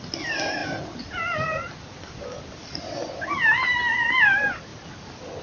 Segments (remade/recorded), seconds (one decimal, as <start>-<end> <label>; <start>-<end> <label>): 0.0-5.4 recorded